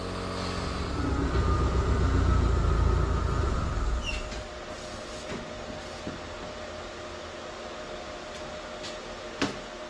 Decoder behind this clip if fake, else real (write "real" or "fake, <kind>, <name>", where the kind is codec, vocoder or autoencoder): real